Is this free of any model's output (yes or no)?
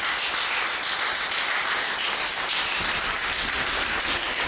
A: yes